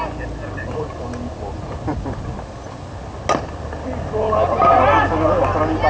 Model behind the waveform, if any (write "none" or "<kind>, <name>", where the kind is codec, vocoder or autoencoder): none